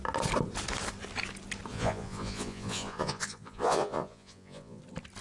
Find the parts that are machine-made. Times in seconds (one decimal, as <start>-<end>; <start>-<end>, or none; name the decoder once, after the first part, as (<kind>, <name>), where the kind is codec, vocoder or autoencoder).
1.7-4.8 (vocoder, Vocos)